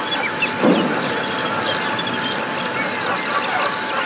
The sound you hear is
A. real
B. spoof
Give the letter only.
A